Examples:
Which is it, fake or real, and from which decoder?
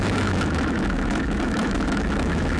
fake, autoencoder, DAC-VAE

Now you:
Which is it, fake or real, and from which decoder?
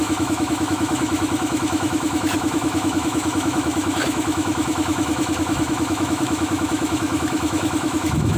fake, autoencoder, DAC-VAE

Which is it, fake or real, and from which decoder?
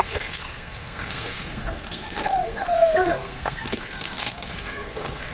fake, codec, SNAC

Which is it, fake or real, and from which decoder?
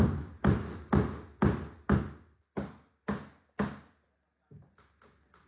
real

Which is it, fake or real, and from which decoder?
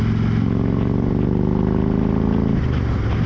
real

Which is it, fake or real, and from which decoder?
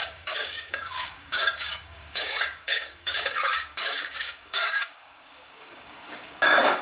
fake, codec, DAC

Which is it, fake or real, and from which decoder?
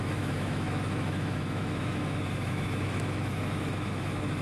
fake, autoencoder, DAC-VAE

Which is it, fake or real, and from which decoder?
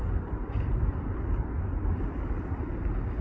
real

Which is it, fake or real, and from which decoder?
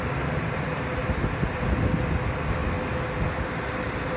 real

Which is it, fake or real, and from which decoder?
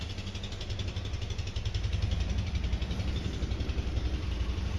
real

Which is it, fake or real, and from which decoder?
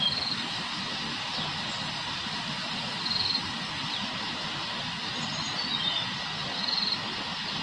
real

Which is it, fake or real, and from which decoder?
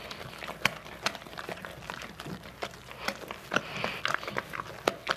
real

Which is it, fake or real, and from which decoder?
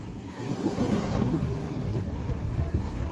fake, codec, SNAC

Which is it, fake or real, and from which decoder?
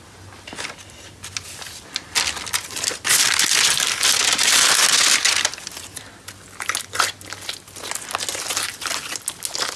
real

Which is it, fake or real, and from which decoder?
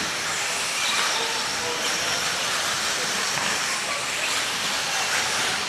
real